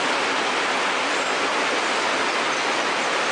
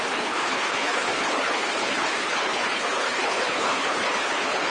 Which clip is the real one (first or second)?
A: first